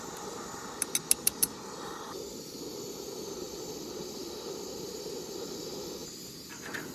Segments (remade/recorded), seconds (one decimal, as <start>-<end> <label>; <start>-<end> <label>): 0.0-6.9 recorded